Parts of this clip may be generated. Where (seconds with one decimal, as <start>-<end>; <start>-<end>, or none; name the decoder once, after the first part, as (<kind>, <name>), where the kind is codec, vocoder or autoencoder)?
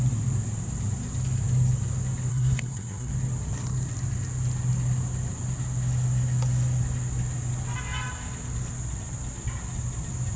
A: 2.3-3.1 (codec, SNAC)